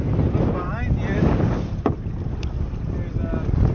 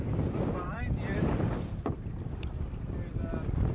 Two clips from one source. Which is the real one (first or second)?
first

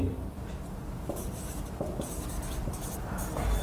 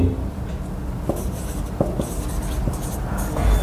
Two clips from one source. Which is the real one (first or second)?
second